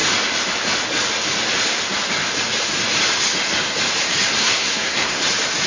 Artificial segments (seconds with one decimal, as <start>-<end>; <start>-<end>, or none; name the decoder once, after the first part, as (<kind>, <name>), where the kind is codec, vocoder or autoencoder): 4.4-5.2 (codec, SNAC)